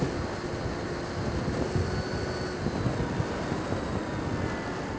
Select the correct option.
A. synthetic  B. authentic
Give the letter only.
B